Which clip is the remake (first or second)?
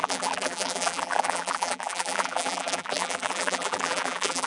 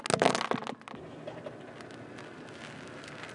first